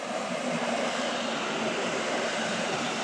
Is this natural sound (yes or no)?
no